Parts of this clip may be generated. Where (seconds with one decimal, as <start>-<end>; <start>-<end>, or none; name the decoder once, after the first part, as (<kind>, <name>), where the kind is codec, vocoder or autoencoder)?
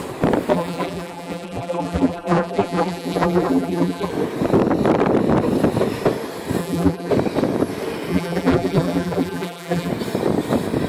0.5-4.1 (vocoder, BigVGAN v2); 6.6-7.1; 8.1-9.9